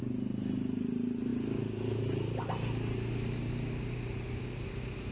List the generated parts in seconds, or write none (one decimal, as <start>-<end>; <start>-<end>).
none